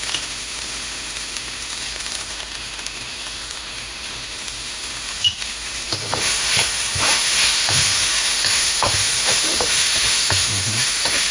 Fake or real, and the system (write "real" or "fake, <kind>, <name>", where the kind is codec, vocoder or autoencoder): fake, autoencoder, DAC-VAE